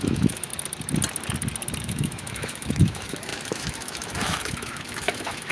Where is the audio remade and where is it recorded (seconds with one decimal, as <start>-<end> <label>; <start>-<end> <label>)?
0.0-0.5 remade; 0.5-1.8 recorded; 1.8-5.5 remade